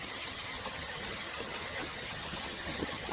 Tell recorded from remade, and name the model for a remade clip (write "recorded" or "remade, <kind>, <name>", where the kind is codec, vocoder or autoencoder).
remade, vocoder, HiFi-GAN